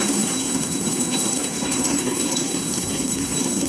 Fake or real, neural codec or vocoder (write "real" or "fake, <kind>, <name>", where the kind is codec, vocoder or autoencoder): fake, codec, SNAC